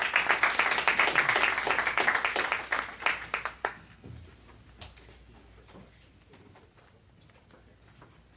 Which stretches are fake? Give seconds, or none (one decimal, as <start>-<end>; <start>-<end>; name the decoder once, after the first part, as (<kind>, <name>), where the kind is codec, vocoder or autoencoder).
3.6-4.1 (codec, SNAC)